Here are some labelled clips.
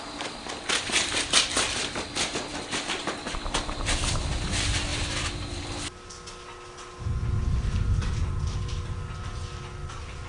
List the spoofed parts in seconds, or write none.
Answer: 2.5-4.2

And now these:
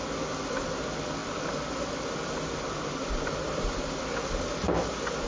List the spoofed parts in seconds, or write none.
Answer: none

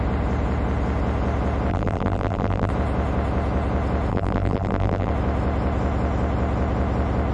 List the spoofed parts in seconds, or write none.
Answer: 1.7-2.7; 4.1-5.1

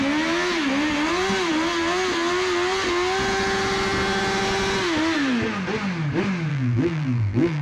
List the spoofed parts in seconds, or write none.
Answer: 6.5-7.6

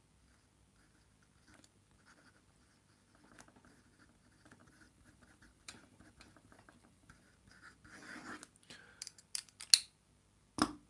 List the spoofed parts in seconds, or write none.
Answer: 4.6-7.3

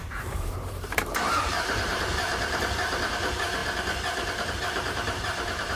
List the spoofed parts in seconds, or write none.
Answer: 0.0-3.6; 4.5-5.8

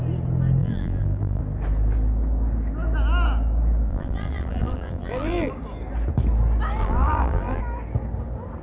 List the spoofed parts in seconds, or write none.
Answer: 0.6-1.4; 3.9-5.5; 6.8-7.6